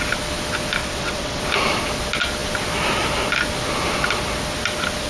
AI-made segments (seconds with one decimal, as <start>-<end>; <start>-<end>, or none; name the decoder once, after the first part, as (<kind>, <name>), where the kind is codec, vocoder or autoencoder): 0.8-1.4 (vocoder, WaveNeXt)